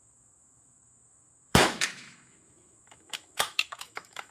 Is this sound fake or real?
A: fake